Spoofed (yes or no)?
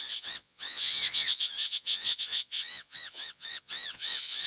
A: yes